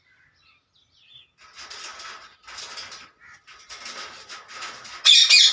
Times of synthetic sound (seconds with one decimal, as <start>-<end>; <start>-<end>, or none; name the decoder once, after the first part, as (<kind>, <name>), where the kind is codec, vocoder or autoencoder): none